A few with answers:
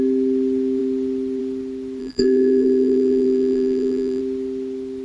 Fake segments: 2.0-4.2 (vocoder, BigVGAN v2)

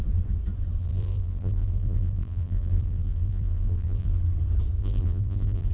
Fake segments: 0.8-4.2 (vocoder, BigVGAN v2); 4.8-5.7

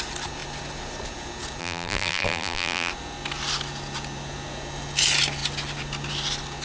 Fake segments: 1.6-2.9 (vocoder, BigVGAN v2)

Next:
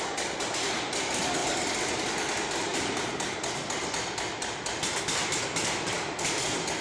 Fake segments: none

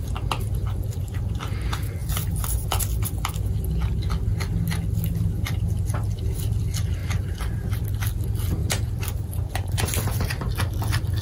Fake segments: 2.0-2.8 (vocoder, BigVGAN v2); 7.0-8.0; 8.6-10.5

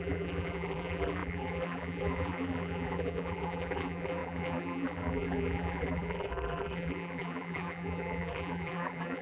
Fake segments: 0.0-9.2 (vocoder, BigVGAN v2)